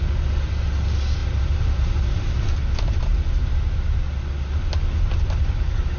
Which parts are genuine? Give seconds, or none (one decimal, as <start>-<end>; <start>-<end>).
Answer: 0.0-1.2; 2.8-6.0